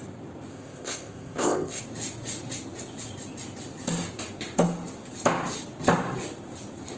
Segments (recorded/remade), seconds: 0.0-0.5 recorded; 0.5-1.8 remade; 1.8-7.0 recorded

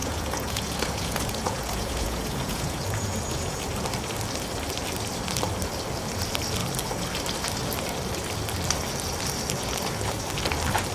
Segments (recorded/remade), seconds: 0.0-3.6 remade; 3.6-10.9 recorded

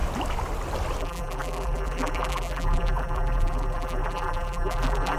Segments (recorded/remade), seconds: 0.0-1.0 recorded; 1.0-5.2 remade

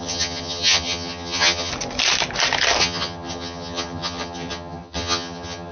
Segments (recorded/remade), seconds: 0.0-1.7 remade; 1.7-2.8 recorded; 2.8-5.7 remade

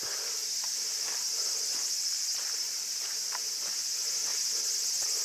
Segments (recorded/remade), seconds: 0.0-0.4 recorded; 0.4-3.5 remade; 3.5-4.3 recorded; 4.3-5.2 remade

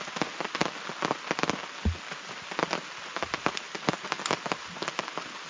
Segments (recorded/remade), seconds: 0.0-5.5 recorded

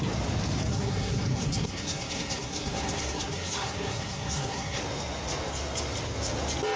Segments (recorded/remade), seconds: 0.0-0.7 recorded; 0.7-4.8 remade; 4.8-6.8 recorded